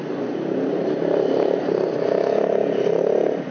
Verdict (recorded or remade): recorded